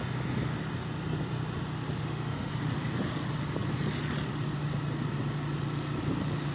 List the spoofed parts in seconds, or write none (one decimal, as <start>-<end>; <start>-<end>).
2.0-2.5